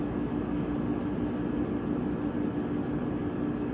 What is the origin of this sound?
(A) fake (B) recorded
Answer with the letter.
B